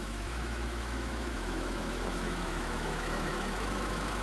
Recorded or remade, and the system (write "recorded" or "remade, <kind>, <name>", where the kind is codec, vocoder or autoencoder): remade, autoencoder, DAC-VAE